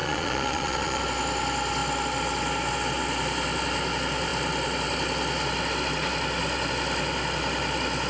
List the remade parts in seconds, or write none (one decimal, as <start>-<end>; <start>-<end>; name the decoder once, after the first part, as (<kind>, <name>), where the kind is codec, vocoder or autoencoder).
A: 0.0-1.0 (vocoder, Vocos)